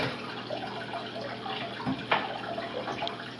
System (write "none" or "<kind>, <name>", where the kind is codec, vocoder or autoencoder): none